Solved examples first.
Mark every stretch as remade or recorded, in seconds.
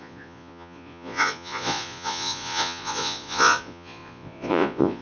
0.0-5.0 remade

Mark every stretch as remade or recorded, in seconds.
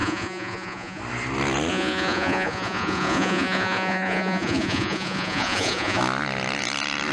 0.0-1.0 remade; 1.0-1.7 recorded; 1.7-6.0 remade; 6.0-7.1 recorded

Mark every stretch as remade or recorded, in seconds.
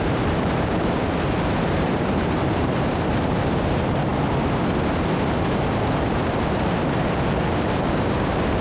0.0-4.1 remade; 4.1-6.6 recorded; 6.6-8.6 remade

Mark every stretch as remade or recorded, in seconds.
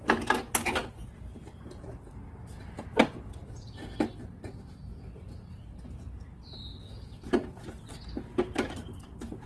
0.0-9.5 recorded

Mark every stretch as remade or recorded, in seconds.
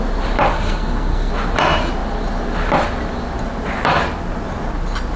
0.0-0.5 recorded; 0.5-1.3 remade; 1.3-5.2 recorded